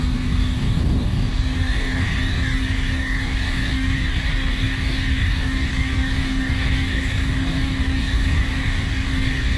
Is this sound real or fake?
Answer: fake